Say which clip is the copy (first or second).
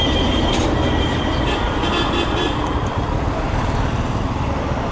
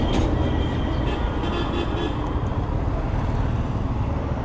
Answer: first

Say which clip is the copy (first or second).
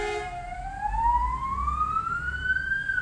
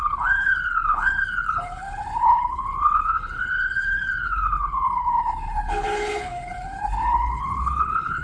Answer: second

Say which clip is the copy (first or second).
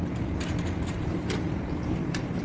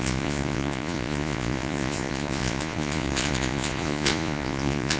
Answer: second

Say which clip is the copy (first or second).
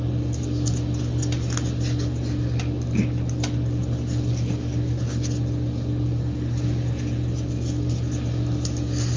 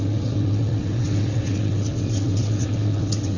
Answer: second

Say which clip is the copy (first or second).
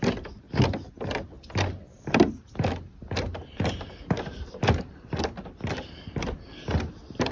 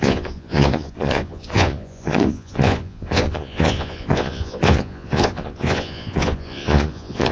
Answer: second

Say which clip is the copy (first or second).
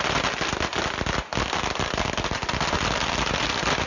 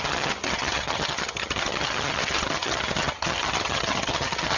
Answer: second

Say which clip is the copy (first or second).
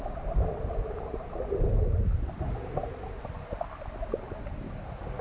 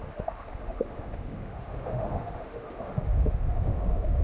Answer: second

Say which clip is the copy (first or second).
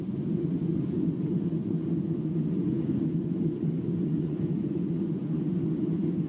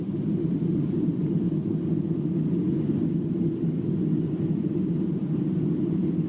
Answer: first